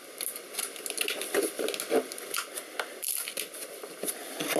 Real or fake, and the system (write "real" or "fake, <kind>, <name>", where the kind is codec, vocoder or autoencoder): real